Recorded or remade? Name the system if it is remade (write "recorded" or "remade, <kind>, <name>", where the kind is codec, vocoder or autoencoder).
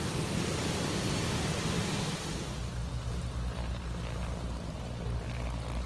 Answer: recorded